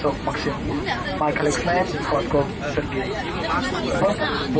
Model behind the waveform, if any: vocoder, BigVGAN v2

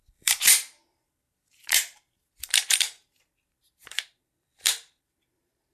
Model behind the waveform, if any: vocoder, BigVGAN v2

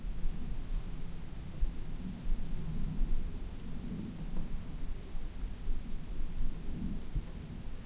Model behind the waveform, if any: none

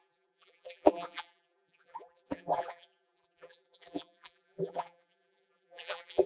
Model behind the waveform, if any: vocoder, BigVGAN v2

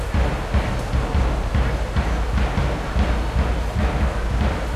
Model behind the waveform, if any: none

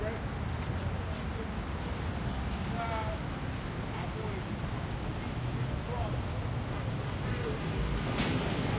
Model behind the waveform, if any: none